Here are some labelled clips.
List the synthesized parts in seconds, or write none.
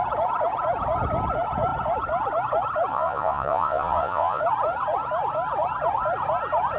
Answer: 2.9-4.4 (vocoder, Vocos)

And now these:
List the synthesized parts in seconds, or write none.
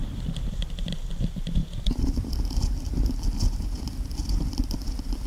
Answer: none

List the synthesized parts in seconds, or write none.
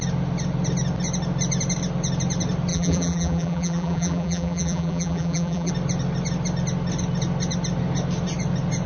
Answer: 2.7-5.7 (vocoder, BigVGAN v2)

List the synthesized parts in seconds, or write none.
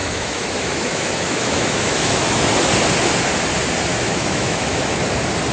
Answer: 0.0-2.5 (autoencoder, DAC-VAE); 3.9-5.0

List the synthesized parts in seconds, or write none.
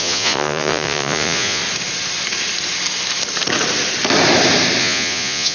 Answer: 0.0-1.6 (vocoder, Vocos); 4.8-5.5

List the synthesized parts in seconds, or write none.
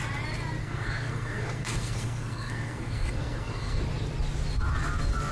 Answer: 0.6-3.8 (codec, SNAC)